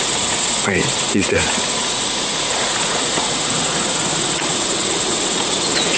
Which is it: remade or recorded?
remade